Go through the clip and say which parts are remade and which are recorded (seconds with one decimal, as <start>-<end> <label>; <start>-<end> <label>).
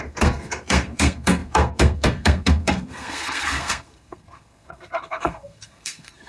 0.0-6.3 remade